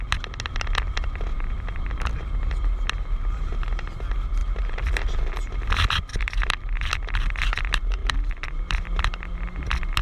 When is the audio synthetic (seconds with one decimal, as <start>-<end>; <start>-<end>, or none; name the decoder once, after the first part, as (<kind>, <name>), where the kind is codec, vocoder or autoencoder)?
1.3-2.1 (vocoder, BigVGAN v2); 4.4-4.9; 6.1-6.9; 8.0-8.8